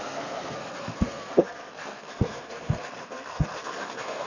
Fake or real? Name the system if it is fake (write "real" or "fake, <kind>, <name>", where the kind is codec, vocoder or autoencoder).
fake, codec, SNAC